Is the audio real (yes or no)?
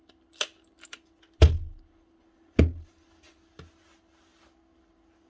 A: yes